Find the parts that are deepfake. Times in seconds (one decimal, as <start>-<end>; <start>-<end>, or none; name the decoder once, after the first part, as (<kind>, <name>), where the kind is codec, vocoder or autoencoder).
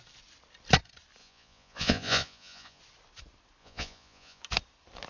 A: 1.2-2.8 (vocoder, Vocos); 3.6-4.4